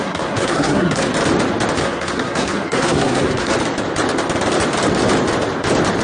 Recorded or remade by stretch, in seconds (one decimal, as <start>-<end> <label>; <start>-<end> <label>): 0.0-1.1 remade; 1.1-1.8 recorded; 1.8-3.5 remade; 3.5-6.0 recorded